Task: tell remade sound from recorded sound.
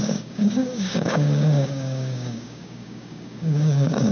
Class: remade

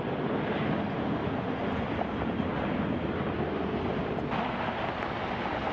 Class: recorded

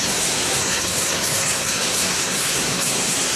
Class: remade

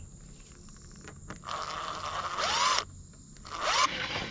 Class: recorded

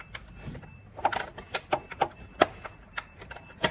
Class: recorded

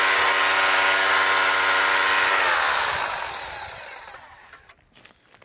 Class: recorded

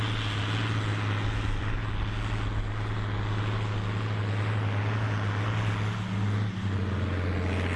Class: recorded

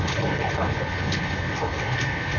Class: remade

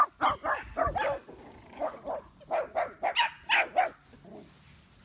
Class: recorded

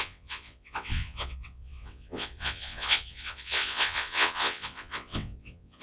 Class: remade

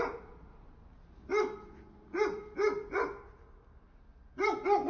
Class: recorded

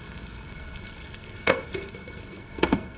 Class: remade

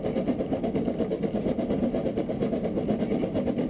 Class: recorded